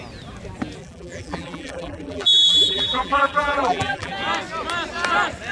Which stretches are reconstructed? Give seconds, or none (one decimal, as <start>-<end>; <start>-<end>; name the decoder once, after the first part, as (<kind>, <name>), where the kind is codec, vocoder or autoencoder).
0.8-4.1 (vocoder, BigVGAN v2)